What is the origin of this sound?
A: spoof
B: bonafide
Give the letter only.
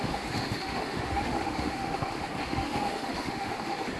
A